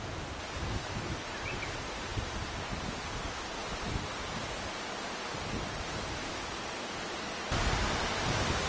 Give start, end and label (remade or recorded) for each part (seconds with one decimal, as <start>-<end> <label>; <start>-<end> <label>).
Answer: 0.0-8.7 recorded